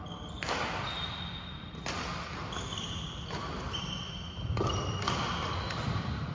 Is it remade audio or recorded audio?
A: recorded